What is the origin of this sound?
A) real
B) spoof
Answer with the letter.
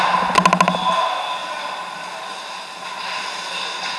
A